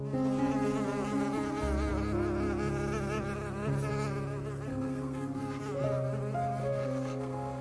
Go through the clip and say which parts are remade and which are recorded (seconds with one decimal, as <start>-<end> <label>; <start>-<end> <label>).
0.0-4.7 recorded; 4.7-5.6 remade; 5.6-6.6 recorded; 6.6-7.6 remade